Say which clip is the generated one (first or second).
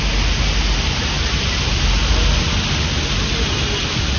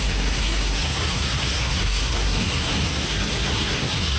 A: second